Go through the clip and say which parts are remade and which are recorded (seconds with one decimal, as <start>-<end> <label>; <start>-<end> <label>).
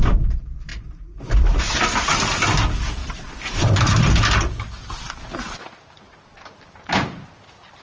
0.0-7.8 remade